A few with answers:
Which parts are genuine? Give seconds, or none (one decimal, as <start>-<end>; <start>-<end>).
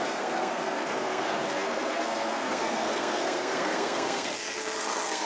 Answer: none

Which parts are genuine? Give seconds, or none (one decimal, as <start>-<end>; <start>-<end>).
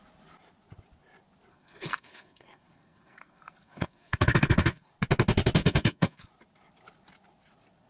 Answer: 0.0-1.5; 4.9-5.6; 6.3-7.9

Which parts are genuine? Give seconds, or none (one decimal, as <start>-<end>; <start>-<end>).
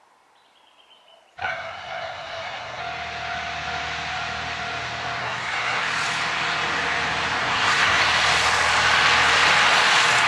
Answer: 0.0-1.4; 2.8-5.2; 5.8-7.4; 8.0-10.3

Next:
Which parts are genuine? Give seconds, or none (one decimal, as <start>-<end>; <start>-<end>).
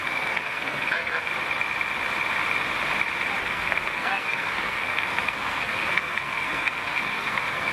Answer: 1.3-3.4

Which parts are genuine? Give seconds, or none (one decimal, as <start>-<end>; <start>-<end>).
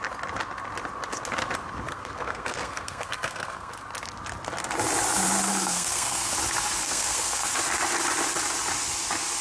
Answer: 0.0-1.9; 3.7-5.5; 6.3-6.8; 7.5-9.4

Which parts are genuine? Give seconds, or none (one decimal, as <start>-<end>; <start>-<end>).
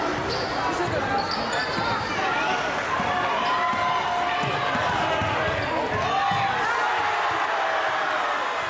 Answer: 0.0-8.7